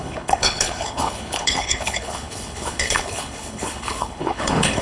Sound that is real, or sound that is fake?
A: fake